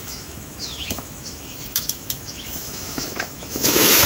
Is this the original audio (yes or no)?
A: no